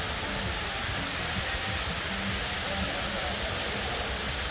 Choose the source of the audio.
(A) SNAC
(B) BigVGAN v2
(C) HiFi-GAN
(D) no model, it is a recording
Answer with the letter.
D